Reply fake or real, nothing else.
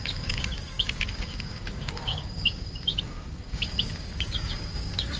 fake